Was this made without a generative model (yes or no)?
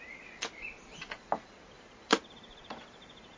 yes